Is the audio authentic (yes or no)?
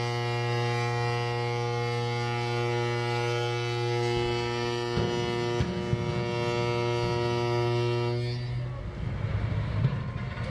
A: yes